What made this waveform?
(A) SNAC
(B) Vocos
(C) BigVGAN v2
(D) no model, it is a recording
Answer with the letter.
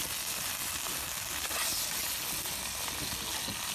D